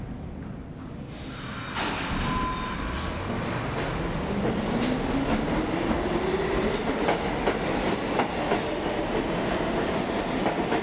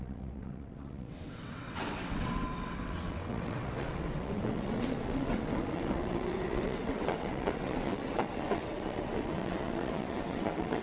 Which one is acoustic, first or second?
first